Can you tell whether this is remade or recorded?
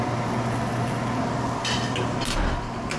recorded